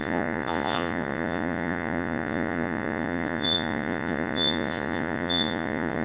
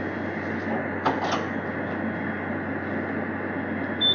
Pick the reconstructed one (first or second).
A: first